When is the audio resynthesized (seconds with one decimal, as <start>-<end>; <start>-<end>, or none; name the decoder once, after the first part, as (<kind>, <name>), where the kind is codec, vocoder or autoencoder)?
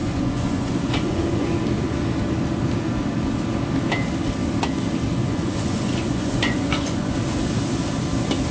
0.0-1.6 (vocoder, Vocos); 5.1-7.1